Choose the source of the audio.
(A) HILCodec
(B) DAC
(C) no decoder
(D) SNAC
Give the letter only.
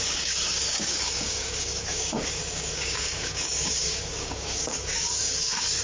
B